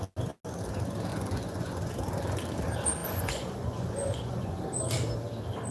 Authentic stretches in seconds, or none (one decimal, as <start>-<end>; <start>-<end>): 0.0-1.1; 1.9-3.0; 4.6-5.7